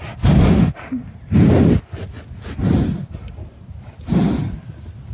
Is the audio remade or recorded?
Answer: recorded